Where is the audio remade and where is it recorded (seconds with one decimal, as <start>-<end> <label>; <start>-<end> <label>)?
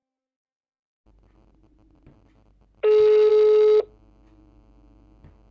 0.0-5.5 recorded